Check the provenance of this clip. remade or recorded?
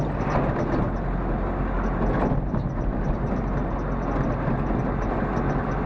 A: recorded